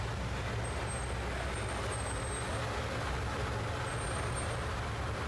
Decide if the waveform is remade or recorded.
recorded